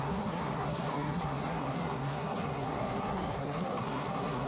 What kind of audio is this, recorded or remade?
remade